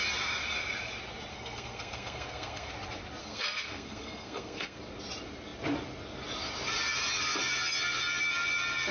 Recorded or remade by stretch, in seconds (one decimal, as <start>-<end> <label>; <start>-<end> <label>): 0.0-1.3 recorded; 1.3-2.7 remade; 2.7-3.2 recorded; 3.2-4.8 remade; 4.8-8.9 recorded

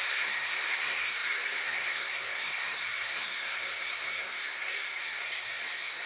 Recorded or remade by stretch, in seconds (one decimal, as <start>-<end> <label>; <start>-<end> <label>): 0.0-6.1 remade

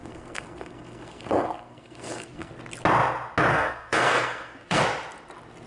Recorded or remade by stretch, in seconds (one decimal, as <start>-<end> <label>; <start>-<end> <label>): 0.0-2.5 remade; 2.5-3.5 recorded; 3.5-4.8 remade; 4.8-5.7 recorded

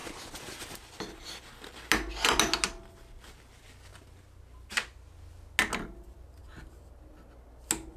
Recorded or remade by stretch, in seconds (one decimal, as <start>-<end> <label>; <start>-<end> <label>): 0.0-8.0 recorded

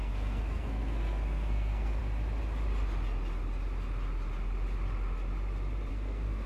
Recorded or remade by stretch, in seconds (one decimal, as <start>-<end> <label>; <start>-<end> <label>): 0.0-2.0 remade; 2.0-5.9 recorded; 5.9-6.5 remade